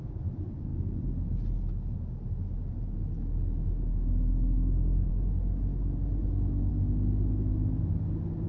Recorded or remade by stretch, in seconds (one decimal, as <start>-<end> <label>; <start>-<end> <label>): 0.0-8.5 recorded